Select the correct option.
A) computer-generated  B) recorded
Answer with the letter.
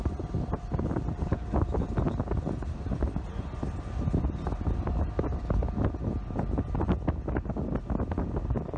B